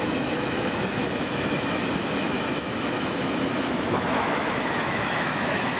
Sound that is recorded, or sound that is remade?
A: remade